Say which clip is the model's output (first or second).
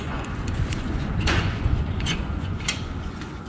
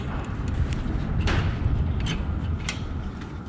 first